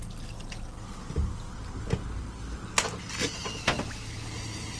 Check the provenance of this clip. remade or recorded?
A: recorded